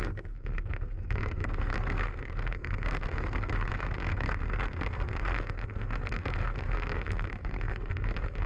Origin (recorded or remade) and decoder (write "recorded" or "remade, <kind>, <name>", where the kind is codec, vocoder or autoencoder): remade, codec, SNAC